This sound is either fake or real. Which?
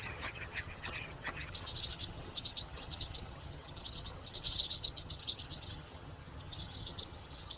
fake